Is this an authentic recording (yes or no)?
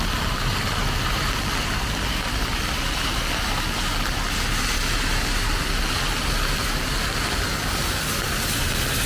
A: yes